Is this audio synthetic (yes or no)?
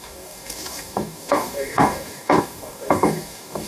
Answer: yes